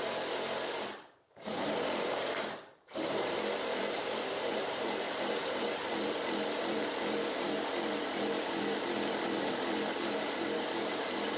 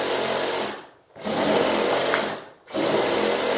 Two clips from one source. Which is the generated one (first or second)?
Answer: first